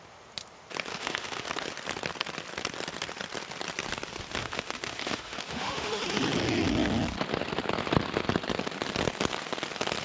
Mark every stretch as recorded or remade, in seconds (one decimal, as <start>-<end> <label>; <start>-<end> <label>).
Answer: 0.0-0.9 recorded; 0.9-1.5 remade; 1.5-4.4 recorded; 4.4-6.0 remade; 6.0-10.0 recorded